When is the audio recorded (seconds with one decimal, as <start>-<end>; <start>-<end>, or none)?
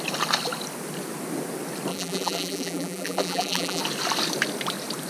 0.0-1.9; 3.8-5.1